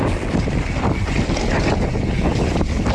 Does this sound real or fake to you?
real